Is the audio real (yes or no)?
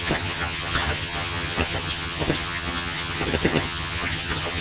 no